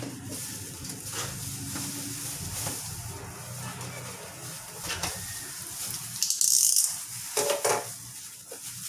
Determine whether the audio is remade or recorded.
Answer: recorded